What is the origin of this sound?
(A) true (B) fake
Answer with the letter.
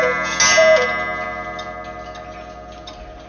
A